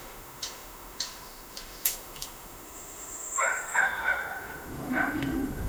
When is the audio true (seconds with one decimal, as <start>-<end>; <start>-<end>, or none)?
none